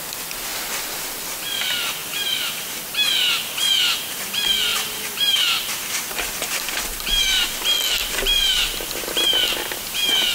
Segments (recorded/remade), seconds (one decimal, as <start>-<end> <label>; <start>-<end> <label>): 0.0-2.0 recorded; 2.0-2.8 remade; 2.8-4.7 recorded; 4.7-7.2 remade; 7.2-8.0 recorded; 8.0-8.6 remade; 8.6-10.3 recorded

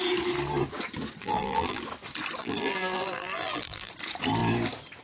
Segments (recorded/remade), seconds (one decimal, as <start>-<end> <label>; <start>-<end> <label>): 0.0-1.2 recorded; 1.2-1.8 remade; 1.8-2.4 recorded; 2.4-3.9 remade; 3.9-5.0 recorded

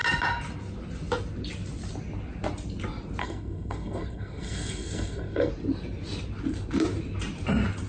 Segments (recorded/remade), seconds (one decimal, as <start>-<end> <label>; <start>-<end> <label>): 0.0-3.2 recorded; 3.2-5.5 remade; 5.5-7.9 recorded